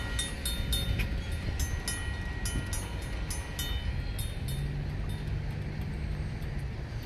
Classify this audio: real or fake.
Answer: real